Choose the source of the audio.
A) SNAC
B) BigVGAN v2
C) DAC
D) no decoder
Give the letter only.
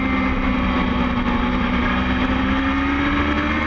D